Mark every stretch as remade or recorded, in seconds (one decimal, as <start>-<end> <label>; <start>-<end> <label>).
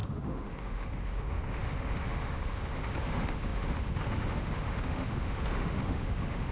0.0-6.5 remade